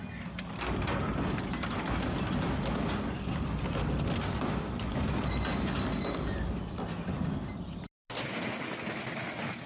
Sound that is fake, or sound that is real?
real